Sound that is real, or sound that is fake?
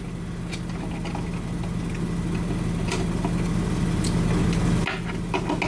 real